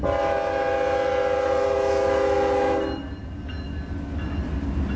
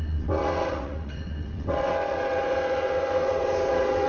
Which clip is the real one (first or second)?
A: first